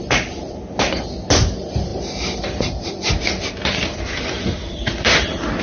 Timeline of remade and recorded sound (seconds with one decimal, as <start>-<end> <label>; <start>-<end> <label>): 0.0-1.9 recorded; 1.9-5.6 remade

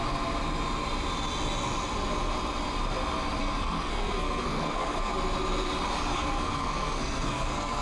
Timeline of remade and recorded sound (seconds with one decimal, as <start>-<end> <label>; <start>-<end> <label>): 0.0-3.4 recorded; 3.4-5.1 remade; 5.1-6.1 recorded; 6.1-7.8 remade

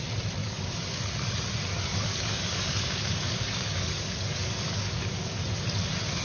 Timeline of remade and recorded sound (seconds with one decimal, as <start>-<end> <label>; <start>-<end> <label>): 0.0-0.4 recorded; 0.4-0.9 remade; 0.9-1.7 recorded; 1.7-5.4 remade; 5.4-6.2 recorded

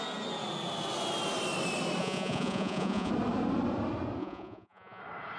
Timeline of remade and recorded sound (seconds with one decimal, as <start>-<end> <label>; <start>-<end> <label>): 0.0-2.0 recorded; 2.0-3.1 remade; 3.1-4.2 recorded; 4.2-5.0 remade; 5.0-5.4 recorded